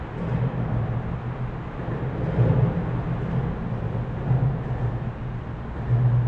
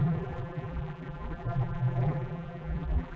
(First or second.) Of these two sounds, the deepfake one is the second